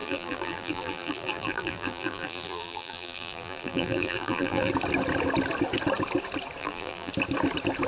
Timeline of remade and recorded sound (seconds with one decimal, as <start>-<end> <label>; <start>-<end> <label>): 0.0-4.7 remade; 4.7-6.6 recorded; 6.6-7.1 remade; 7.1-7.9 recorded

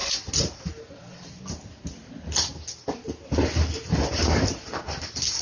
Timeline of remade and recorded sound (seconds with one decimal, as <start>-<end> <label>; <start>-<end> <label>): 0.0-1.4 remade; 1.4-5.4 recorded

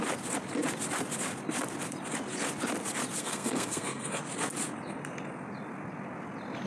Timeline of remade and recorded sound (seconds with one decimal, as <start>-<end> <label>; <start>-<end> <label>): 0.0-3.2 recorded; 3.2-4.2 remade; 4.2-6.7 recorded

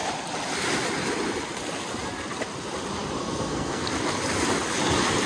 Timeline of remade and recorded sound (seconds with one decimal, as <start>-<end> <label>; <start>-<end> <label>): 0.0-3.2 recorded; 3.2-3.9 remade; 3.9-5.3 recorded

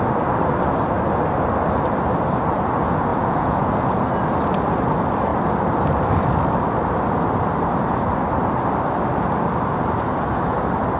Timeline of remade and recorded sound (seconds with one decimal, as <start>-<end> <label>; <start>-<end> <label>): 0.0-3.1 recorded; 3.1-4.1 remade; 4.1-11.0 recorded

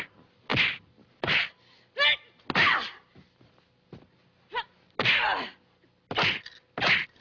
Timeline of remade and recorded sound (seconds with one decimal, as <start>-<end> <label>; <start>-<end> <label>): 0.0-7.2 recorded